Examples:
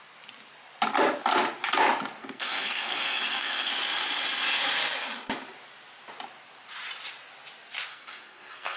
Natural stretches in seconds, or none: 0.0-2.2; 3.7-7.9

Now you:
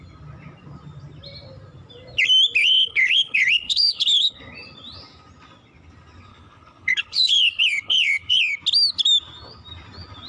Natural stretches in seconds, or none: 0.0-2.6; 4.4-6.3; 8.4-10.3